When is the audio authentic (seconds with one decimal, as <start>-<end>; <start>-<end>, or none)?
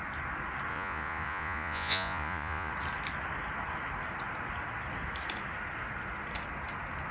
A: 0.0-0.7; 2.7-7.1